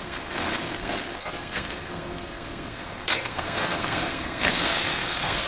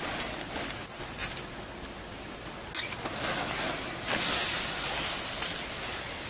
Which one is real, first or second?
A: second